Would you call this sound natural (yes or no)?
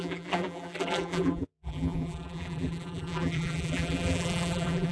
no